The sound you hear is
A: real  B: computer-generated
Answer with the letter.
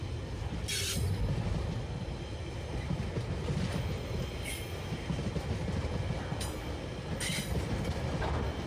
A